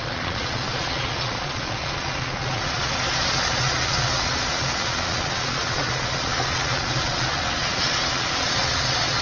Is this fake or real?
fake